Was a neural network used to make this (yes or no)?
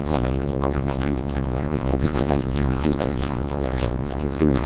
yes